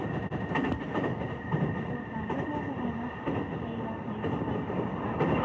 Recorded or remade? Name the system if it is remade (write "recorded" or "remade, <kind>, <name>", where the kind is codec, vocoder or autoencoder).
recorded